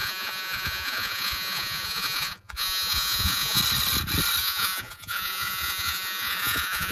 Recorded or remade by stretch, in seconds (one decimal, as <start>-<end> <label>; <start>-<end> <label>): 0.0-3.6 remade; 3.6-4.4 recorded; 4.4-6.9 remade